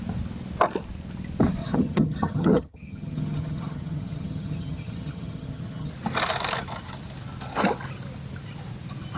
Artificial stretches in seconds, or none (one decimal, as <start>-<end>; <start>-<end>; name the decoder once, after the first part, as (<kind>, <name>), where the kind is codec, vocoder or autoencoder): 1.6-5.9 (vocoder, HiFi-GAN)